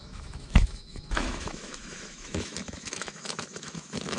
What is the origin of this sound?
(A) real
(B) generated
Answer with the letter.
B